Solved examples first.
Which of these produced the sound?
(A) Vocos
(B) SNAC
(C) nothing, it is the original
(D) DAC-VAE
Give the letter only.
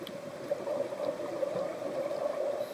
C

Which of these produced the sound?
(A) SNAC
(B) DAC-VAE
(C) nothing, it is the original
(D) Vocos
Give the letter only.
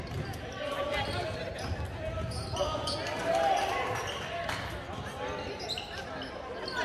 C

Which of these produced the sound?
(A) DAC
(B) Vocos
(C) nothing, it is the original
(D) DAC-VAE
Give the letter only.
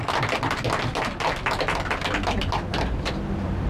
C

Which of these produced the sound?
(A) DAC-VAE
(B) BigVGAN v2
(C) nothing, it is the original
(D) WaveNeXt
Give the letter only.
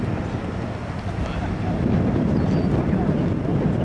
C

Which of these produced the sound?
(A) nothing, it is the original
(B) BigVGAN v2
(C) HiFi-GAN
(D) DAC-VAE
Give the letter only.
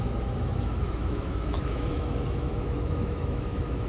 D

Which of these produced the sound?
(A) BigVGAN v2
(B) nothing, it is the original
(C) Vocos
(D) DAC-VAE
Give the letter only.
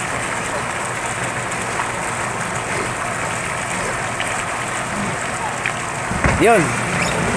B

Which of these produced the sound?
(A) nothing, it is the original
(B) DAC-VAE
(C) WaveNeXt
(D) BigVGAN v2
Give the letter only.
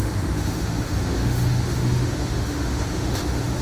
B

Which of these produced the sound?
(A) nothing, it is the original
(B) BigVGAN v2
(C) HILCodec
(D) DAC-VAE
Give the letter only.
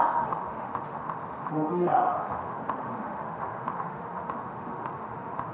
D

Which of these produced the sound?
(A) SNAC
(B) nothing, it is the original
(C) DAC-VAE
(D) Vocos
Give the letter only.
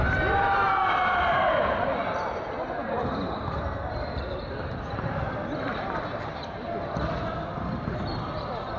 B